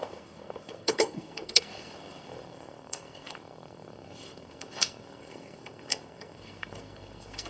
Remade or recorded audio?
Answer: remade